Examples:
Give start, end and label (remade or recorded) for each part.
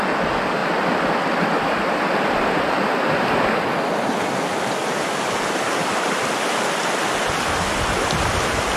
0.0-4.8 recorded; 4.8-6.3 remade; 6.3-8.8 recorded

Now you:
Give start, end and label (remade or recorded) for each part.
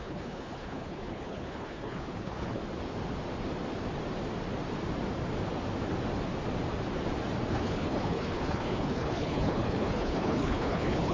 0.0-2.6 remade; 2.6-7.5 recorded; 7.5-11.1 remade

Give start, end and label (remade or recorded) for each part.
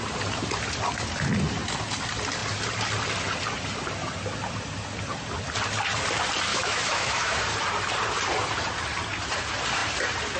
0.0-6.5 recorded; 6.5-7.4 remade; 7.4-10.4 recorded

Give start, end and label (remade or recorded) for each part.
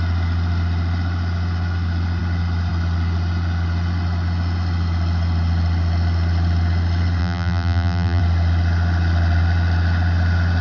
0.0-7.2 recorded; 7.2-8.2 remade; 8.2-10.6 recorded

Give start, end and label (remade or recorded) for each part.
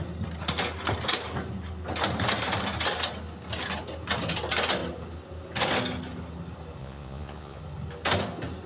0.0-6.8 recorded; 6.8-7.6 remade; 7.6-8.7 recorded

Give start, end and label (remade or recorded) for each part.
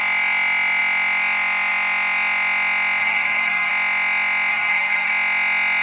0.0-3.0 recorded; 3.0-3.7 remade; 3.7-4.5 recorded; 4.5-5.1 remade; 5.1-5.8 recorded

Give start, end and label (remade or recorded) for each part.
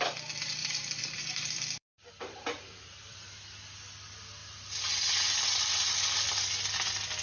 0.0-0.6 recorded; 0.6-3.3 remade; 3.3-7.2 recorded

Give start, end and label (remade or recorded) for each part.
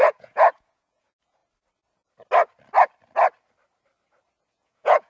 0.0-1.4 remade; 1.4-4.5 recorded; 4.5-5.1 remade